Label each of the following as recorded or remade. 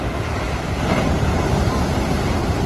recorded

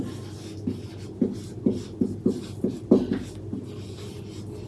recorded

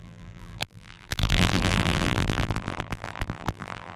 remade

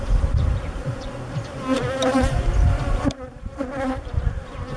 remade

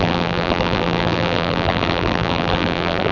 remade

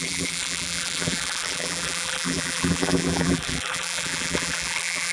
remade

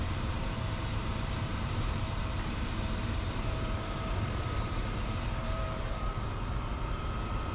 remade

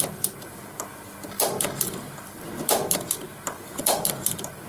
remade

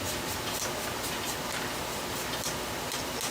recorded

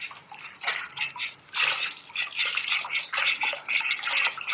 remade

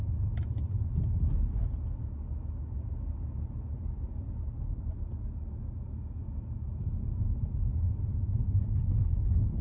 recorded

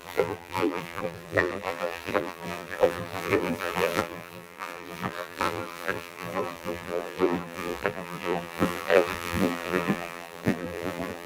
remade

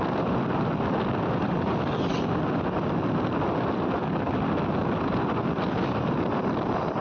recorded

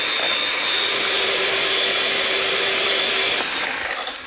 remade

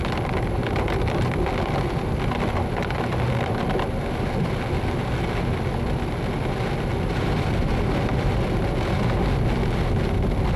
recorded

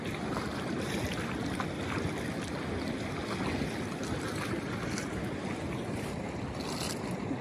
recorded